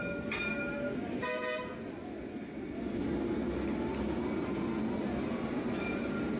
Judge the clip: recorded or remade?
recorded